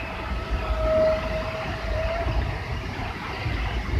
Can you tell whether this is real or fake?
real